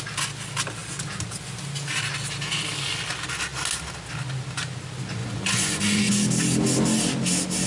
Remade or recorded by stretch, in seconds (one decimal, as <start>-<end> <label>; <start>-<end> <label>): 0.0-5.2 recorded; 5.2-6.1 remade; 6.1-7.7 recorded